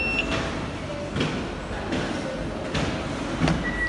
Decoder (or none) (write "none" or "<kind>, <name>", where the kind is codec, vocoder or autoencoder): none